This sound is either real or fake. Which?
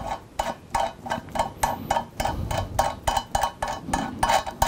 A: real